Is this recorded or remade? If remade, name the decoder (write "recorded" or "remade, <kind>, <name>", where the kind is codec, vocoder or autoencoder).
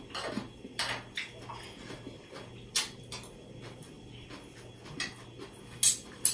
recorded